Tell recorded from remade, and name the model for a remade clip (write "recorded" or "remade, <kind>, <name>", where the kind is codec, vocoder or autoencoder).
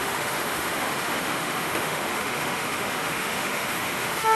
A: remade, autoencoder, DAC-VAE